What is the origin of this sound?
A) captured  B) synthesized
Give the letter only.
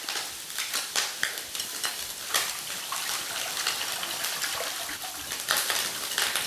A